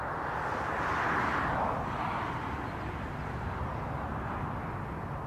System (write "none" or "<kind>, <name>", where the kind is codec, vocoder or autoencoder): none